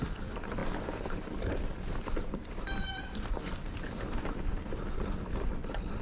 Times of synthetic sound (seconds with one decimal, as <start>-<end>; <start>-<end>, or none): 0.6-4.2